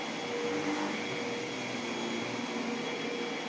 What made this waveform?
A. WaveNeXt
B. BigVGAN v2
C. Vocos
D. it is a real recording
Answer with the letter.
D